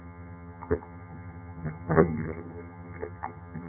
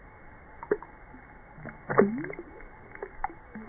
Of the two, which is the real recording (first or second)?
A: second